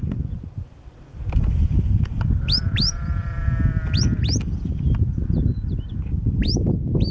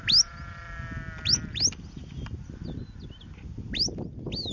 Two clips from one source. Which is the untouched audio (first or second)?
second